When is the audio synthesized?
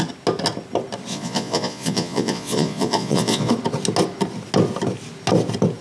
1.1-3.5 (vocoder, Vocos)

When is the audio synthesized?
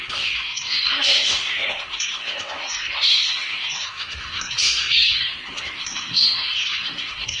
0.0-7.4 (codec, SNAC)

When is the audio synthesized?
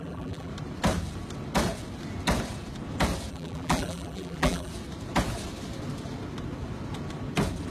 0.0-0.5 (vocoder, BigVGAN v2); 3.3-4.7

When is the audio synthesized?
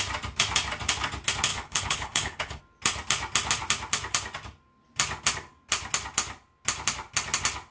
1.5-2.6 (codec, HILCodec)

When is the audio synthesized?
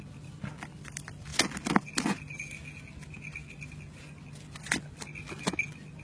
none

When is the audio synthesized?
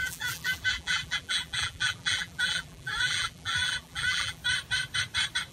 0.0-4.4 (vocoder, BigVGAN v2)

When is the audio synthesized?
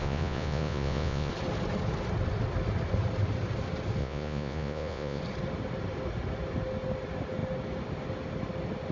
0.0-1.3 (vocoder, Vocos); 4.0-5.2